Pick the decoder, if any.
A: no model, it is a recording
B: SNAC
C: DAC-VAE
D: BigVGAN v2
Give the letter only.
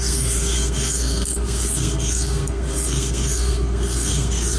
B